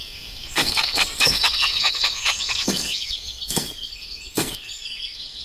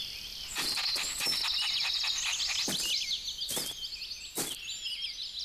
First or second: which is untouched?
second